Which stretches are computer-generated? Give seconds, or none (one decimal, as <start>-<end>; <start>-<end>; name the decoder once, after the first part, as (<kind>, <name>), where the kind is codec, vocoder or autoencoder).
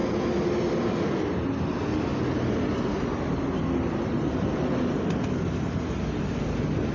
none